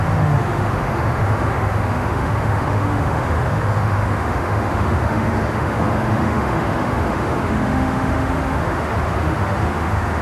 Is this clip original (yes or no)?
no